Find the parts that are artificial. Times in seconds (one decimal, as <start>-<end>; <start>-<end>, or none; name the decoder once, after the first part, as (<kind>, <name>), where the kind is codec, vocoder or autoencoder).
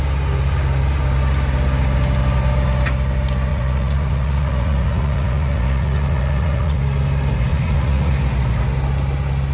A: 3.5-6.8 (vocoder, Vocos); 7.5-8.1